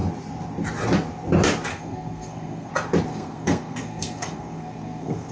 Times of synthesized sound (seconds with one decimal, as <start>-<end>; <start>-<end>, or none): 1.7-2.7; 3.1-5.3

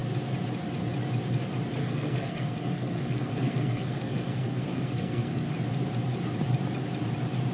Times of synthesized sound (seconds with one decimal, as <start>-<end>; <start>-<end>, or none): 1.8-5.5

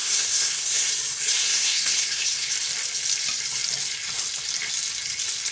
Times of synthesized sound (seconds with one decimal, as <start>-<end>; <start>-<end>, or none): 0.0-0.9; 1.4-2.5

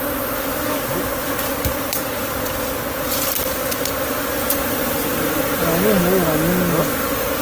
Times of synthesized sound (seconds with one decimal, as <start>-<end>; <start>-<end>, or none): none

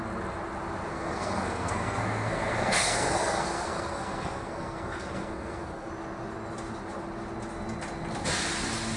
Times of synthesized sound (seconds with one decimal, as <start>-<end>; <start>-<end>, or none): 0.9-5.9

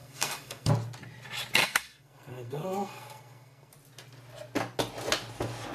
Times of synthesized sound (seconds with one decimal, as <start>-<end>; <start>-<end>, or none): 0.0-0.7; 1.6-3.7

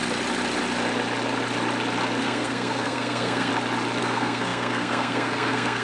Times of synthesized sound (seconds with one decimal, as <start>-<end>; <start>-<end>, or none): 2.2-3.5; 4.0-5.8